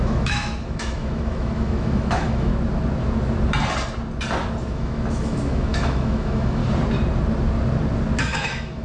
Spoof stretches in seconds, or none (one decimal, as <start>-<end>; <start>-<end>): 0.0-2.5; 4.6-6.6; 8.2-8.8